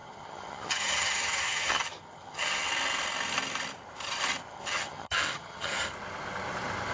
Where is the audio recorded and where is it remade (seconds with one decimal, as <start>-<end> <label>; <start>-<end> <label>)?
0.0-2.7 remade; 2.7-4.5 recorded; 4.5-5.8 remade; 5.8-6.9 recorded